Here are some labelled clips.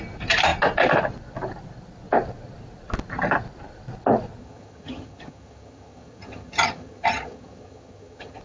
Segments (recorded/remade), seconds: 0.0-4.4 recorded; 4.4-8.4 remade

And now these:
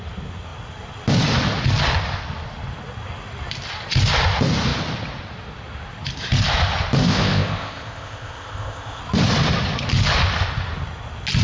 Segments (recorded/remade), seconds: 0.0-7.0 recorded; 7.0-9.0 remade; 9.0-11.4 recorded

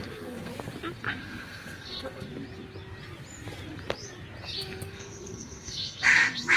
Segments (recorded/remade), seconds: 0.0-0.5 remade; 0.5-1.2 recorded; 1.2-2.3 remade; 2.3-4.9 recorded; 4.9-6.6 remade

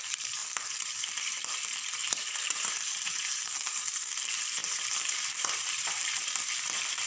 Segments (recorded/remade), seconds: 0.0-7.1 remade

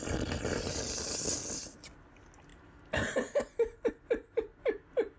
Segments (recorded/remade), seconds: 0.0-5.2 recorded

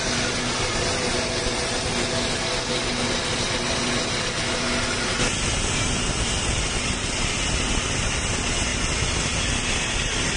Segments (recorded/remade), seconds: 0.0-10.4 recorded